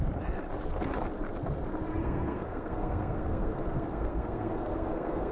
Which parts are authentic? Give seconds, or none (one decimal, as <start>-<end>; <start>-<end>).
0.0-2.0